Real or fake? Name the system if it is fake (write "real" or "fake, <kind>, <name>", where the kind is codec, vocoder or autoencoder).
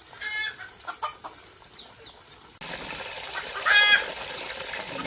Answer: real